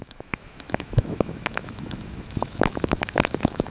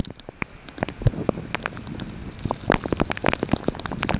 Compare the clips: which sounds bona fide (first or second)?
second